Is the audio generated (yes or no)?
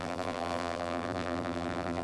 yes